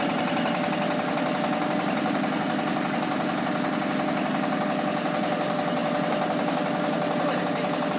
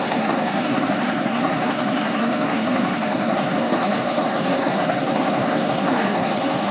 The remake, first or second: second